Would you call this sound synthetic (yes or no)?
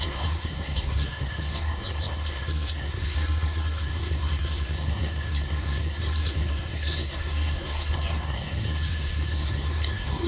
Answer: yes